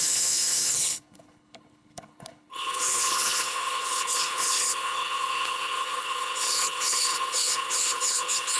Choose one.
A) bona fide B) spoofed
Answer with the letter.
B